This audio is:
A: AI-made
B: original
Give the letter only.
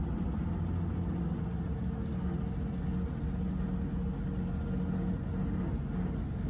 B